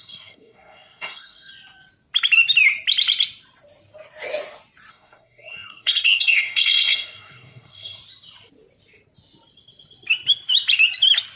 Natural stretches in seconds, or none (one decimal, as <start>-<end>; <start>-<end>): 1.5-4.9; 8.0-11.4